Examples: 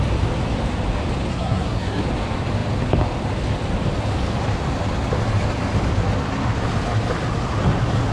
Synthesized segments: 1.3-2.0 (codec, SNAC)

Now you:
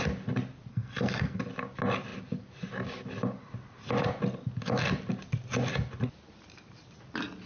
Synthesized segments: 0.7-1.4 (codec, SNAC)